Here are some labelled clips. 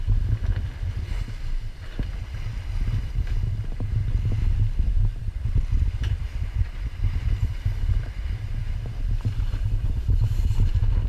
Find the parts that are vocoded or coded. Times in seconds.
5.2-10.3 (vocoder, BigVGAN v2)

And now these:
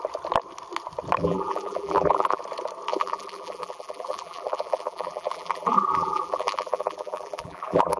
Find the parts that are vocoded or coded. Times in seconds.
1.2-2.4 (vocoder, BigVGAN v2); 2.9-8.0

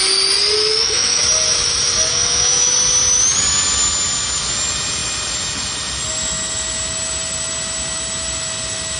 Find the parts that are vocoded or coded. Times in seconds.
0.7-1.2 (autoencoder, DAC-VAE); 2.1-2.7

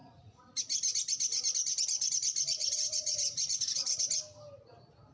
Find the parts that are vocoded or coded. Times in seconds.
0.0-0.6 (vocoder, Vocos); 2.6-4.0

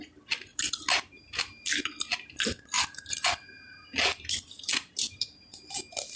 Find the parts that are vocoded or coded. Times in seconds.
0.5-4.2 (vocoder, BigVGAN v2); 4.7-5.7

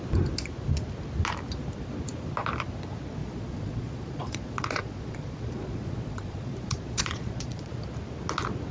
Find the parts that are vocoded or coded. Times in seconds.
3.2-7.7 (vocoder, Vocos)

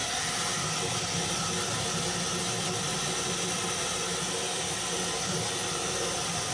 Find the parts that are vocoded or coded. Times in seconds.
none

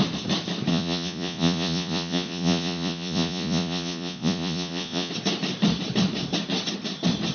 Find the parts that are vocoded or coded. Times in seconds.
0.7-5.1 (vocoder, Vocos)